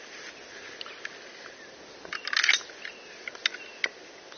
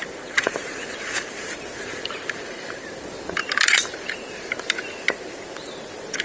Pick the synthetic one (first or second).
second